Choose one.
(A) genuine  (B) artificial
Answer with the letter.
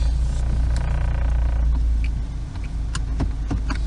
A